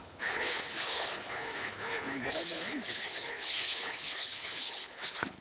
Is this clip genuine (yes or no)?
no